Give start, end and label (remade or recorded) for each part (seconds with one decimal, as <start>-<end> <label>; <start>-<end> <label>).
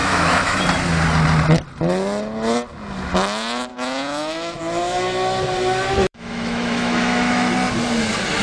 0.0-0.6 remade; 0.6-3.7 recorded; 3.7-4.6 remade; 4.6-6.0 recorded; 6.0-7.5 remade; 7.5-8.4 recorded